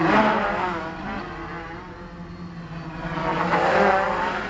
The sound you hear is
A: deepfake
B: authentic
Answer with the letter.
B